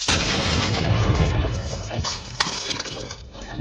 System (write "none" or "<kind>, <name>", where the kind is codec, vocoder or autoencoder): codec, SNAC